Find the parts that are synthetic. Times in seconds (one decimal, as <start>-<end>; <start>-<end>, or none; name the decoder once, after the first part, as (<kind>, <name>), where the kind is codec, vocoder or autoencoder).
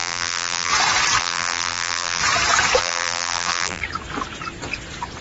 0.0-0.7 (vocoder, BigVGAN v2); 1.2-2.2; 2.8-3.8